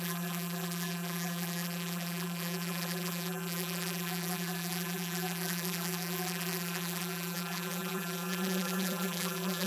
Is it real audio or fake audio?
fake